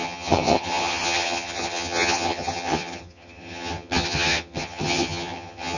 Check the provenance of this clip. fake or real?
fake